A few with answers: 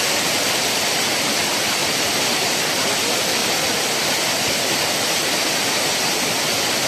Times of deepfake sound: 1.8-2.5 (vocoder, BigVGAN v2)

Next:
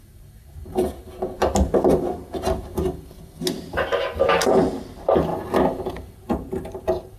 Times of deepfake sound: 0.0-0.6 (vocoder, BigVGAN v2); 2.0-2.7; 3.5-5.3; 5.9-7.2

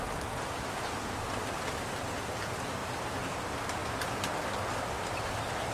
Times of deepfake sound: 2.8-3.4 (vocoder, BigVGAN v2)

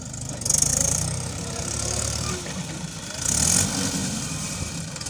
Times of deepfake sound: 0.7-2.3 (vocoder, BigVGAN v2); 4.0-5.1

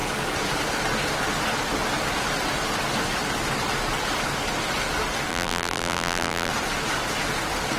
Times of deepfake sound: 5.3-6.5 (vocoder, BigVGAN v2)